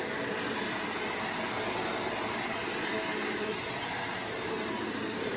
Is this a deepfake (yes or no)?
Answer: no